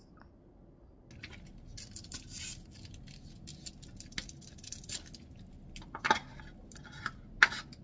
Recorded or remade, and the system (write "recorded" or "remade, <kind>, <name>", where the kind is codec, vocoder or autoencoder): recorded